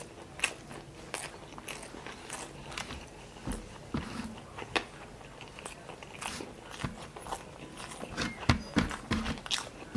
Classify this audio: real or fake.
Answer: real